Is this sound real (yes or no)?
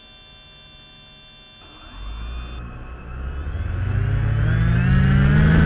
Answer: yes